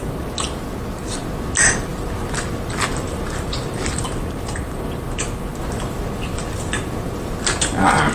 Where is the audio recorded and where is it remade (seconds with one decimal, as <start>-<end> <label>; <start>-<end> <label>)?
0.0-8.1 recorded